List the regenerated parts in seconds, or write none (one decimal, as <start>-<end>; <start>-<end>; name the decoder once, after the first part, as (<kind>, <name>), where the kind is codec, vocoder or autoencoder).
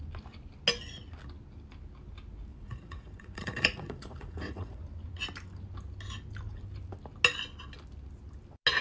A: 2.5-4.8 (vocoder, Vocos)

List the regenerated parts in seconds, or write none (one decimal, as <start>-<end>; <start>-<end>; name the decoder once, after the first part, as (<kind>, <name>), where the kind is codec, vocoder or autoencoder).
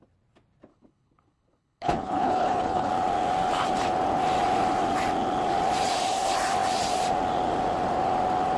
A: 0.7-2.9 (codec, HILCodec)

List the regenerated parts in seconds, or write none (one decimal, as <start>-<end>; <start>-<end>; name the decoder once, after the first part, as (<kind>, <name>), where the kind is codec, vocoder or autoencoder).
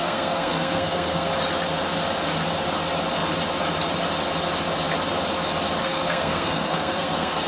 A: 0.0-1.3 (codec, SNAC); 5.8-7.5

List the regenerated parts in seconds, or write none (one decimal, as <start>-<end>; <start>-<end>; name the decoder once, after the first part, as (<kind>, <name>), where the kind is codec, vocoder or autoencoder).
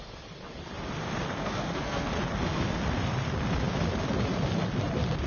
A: 1.4-2.1 (codec, SNAC)